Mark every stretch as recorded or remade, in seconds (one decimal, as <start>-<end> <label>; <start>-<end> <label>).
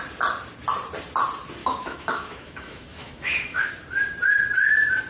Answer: 0.0-1.6 recorded; 1.6-3.7 remade; 3.7-5.1 recorded